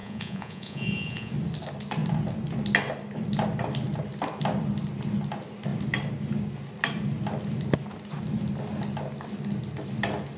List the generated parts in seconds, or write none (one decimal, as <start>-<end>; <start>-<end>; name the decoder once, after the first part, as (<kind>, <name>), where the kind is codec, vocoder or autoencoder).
0.0-1.3 (vocoder, Vocos)